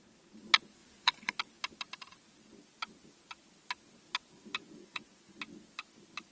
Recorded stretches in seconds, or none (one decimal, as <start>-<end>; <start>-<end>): 0.0-0.8; 1.4-4.8; 5.4-6.3

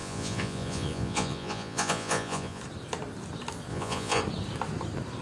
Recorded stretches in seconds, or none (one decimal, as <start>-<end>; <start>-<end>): 2.6-3.7; 4.2-5.2

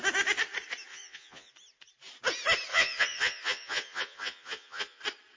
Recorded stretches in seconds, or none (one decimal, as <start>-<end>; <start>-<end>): 0.0-0.9; 1.5-2.7; 5.0-5.4